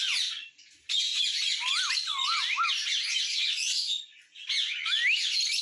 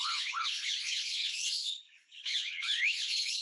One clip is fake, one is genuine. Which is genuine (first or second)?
first